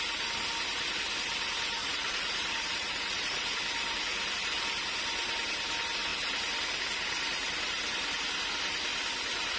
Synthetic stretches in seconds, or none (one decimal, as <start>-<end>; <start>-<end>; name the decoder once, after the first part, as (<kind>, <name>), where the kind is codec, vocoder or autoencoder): 1.8-3.6 (vocoder, Vocos)